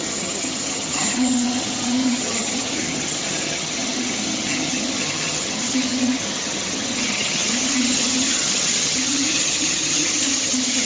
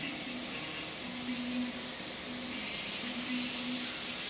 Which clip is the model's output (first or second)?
first